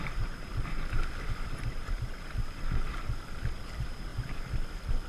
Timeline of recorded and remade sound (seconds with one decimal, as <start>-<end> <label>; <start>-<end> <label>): 0.0-0.5 remade; 0.5-3.6 recorded; 3.6-4.1 remade; 4.1-5.1 recorded